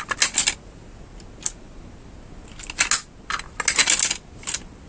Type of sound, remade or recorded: recorded